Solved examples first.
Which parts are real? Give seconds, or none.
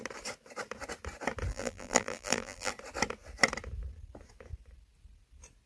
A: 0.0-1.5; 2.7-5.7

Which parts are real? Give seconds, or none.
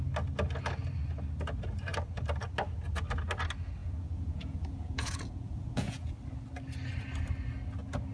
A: 0.0-3.8; 6.1-8.1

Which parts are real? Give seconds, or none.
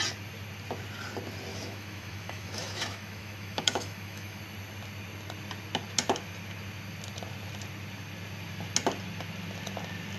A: 0.0-1.5; 4.4-10.2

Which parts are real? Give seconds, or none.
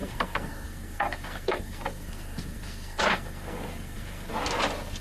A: 4.3-5.0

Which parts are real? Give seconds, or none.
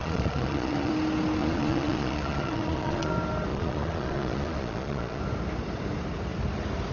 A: 0.9-1.4; 3.1-3.5; 5.2-6.9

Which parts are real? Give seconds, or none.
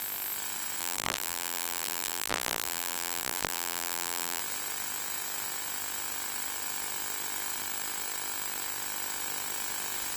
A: 0.0-0.8; 4.4-10.2